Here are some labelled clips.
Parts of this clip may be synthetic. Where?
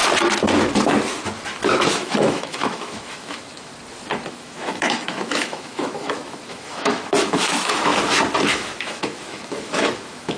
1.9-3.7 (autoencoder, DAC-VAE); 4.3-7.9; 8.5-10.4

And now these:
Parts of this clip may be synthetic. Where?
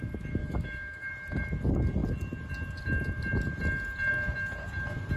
0.4-1.1 (autoencoder, DAC-VAE)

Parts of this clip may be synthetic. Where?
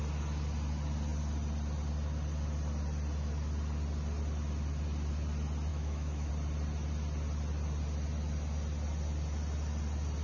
5.7-6.3 (autoencoder, DAC-VAE)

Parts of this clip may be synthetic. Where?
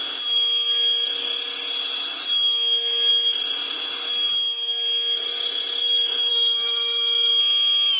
6.3-7.4 (autoencoder, DAC-VAE)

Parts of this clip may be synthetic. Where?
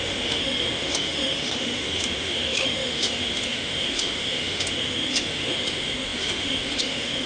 0.0-7.3 (autoencoder, DAC-VAE)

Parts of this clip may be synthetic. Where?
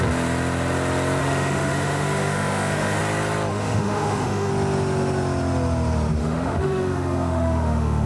1.2-3.0 (autoencoder, DAC-VAE); 3.5-4.5; 6.2-8.1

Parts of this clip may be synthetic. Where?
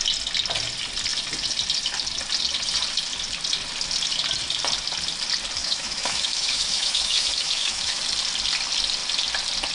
5.6-8.0 (autoencoder, DAC-VAE)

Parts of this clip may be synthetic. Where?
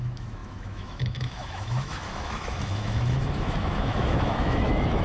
0.0-5.0 (autoencoder, DAC-VAE)